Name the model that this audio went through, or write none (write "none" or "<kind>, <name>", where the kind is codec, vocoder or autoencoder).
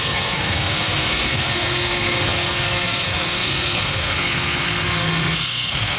codec, SNAC